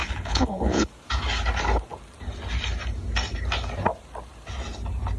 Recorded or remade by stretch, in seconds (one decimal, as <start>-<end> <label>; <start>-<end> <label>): 0.0-0.9 remade; 0.9-5.2 recorded